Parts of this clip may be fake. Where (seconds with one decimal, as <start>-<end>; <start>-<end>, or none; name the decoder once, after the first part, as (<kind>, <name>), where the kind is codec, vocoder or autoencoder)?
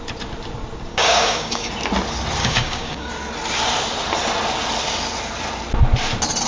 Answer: 0.9-1.7 (codec, DAC); 2.4-3.1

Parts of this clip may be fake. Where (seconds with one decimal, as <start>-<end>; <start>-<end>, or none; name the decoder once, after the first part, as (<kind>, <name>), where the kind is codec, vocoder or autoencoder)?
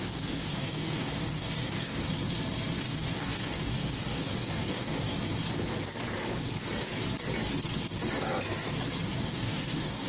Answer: 0.0-2.1 (codec, DAC); 2.8-5.1; 9.2-10.1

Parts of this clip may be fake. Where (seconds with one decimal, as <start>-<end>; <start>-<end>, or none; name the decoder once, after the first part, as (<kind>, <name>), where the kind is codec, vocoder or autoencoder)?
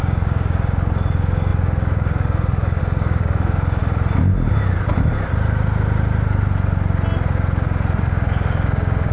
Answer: 0.0-3.8 (codec, DAC); 8.0-9.1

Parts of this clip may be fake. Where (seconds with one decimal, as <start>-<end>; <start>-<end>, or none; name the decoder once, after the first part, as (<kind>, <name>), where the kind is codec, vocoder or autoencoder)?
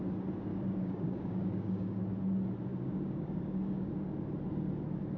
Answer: 0.5-2.0 (codec, DAC); 2.7-3.9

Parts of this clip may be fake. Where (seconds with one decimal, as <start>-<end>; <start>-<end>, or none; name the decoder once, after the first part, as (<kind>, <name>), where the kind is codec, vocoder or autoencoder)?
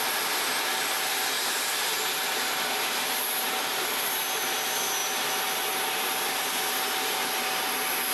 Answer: none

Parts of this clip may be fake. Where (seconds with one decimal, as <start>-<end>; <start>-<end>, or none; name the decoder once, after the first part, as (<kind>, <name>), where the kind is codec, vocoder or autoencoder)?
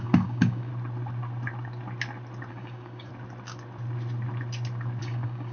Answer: 0.0-0.7 (codec, DAC); 2.5-3.1; 5.0-5.5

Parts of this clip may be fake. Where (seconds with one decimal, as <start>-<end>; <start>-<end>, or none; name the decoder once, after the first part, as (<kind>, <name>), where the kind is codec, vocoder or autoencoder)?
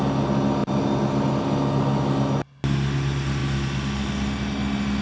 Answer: none